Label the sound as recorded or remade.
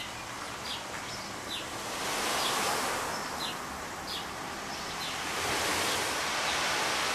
recorded